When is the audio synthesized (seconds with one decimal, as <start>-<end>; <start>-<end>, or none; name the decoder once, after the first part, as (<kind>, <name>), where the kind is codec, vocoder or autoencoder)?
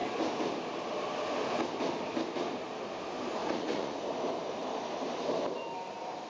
3.4-4.0 (vocoder, Vocos)